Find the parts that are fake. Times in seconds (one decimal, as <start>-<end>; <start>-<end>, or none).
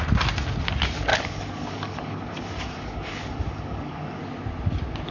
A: 1.1-4.2